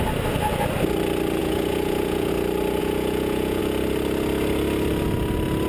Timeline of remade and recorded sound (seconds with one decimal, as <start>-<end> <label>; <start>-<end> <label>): 0.0-1.4 recorded; 1.4-2.3 remade; 2.3-2.8 recorded; 2.8-3.6 remade; 3.6-5.7 recorded